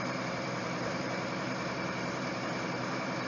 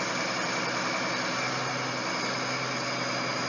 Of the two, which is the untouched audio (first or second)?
second